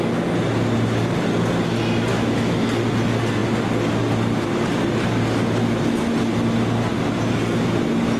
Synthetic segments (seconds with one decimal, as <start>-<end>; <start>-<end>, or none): 2.1-2.6